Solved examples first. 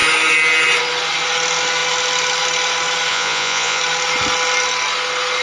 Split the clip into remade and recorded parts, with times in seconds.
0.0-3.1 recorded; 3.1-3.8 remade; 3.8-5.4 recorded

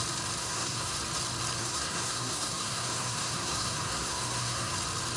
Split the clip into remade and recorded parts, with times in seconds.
0.0-0.4 recorded; 0.4-1.0 remade; 1.0-1.6 recorded; 1.6-4.7 remade; 4.7-5.2 recorded